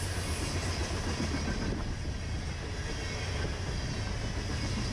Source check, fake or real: real